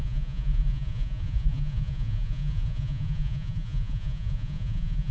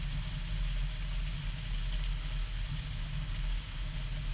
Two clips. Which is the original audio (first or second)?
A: second